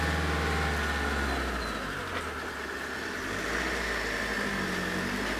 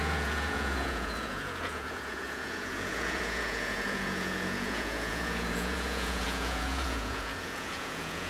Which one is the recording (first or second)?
first